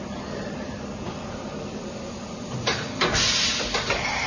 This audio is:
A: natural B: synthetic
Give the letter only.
A